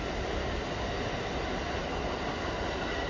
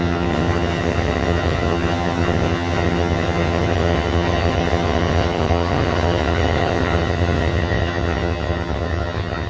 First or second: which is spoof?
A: second